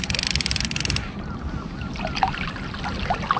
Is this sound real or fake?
real